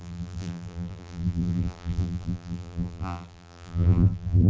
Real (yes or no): no